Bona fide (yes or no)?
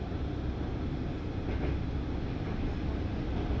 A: yes